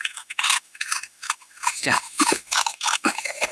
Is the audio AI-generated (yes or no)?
yes